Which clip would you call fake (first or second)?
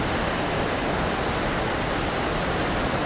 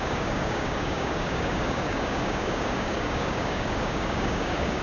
second